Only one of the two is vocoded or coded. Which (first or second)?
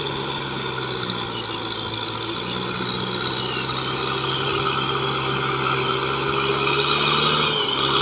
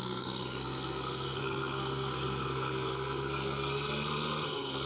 second